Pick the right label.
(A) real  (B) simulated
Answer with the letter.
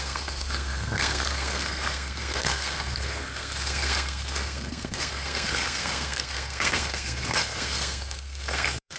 B